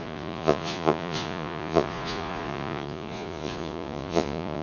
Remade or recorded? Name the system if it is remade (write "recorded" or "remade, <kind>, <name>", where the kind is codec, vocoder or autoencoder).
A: remade, vocoder, Vocos